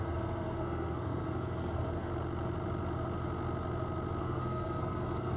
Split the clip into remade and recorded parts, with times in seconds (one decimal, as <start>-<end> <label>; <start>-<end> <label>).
0.0-2.1 remade; 2.1-4.2 recorded; 4.2-5.4 remade